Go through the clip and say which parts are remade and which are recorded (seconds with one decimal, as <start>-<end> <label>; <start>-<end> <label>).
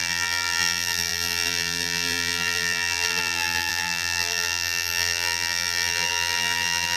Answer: 0.0-7.0 remade